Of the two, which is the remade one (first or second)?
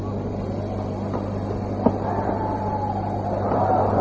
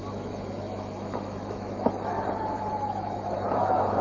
second